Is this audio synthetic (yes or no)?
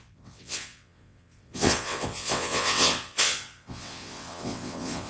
yes